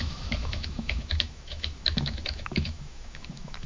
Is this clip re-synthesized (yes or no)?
yes